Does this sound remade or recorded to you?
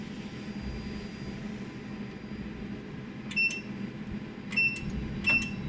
recorded